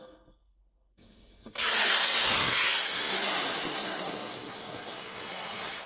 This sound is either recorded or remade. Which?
remade